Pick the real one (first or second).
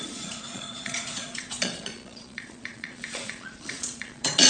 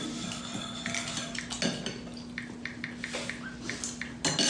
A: second